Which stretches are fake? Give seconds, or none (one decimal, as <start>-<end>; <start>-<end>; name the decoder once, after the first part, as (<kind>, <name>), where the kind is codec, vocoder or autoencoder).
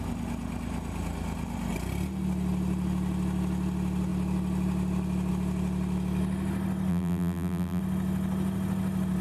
6.9-7.8 (vocoder, BigVGAN v2)